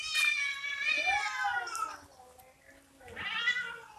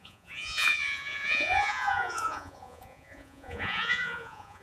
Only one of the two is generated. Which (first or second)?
second